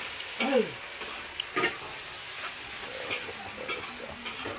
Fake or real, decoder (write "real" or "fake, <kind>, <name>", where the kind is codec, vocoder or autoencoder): real